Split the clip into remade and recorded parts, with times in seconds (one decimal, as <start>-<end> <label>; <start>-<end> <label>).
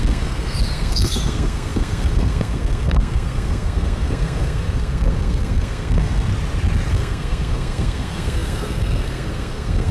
0.0-6.3 remade; 6.3-6.9 recorded; 6.9-9.9 remade